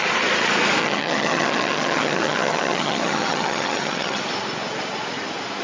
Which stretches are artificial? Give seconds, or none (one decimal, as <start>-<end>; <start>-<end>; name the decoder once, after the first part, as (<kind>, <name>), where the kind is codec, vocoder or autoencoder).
0.8-4.2 (vocoder, HiFi-GAN)